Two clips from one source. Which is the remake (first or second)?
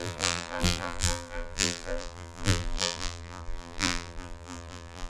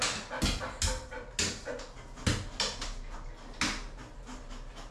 first